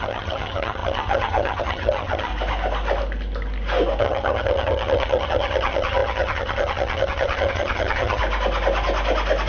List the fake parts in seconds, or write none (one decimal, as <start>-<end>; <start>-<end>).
0.0-2.3; 4.0-8.2